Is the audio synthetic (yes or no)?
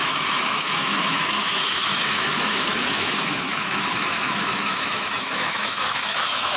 yes